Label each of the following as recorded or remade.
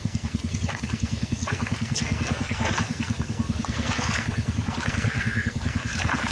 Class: remade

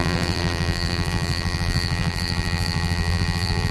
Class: remade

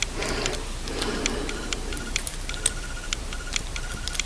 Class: remade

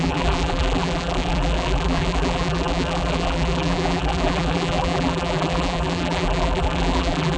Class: remade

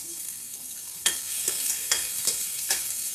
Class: remade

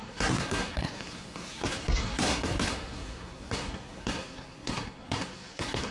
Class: remade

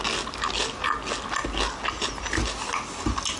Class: recorded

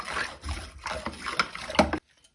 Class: recorded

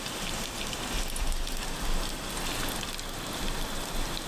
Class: recorded